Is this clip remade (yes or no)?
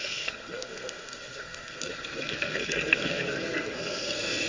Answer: yes